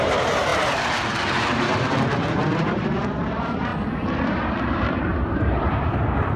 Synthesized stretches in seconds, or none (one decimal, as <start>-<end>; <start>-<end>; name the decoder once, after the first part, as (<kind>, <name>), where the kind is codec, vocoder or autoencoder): 0.0-3.7 (vocoder, BigVGAN v2); 4.2-6.4